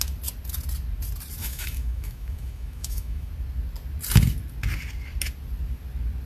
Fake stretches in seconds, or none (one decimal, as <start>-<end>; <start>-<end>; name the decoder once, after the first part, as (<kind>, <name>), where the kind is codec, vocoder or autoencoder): 1.4-3.3 (autoencoder, DAC-VAE)